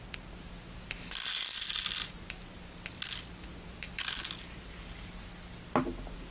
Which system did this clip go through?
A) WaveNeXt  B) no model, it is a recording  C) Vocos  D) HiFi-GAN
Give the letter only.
B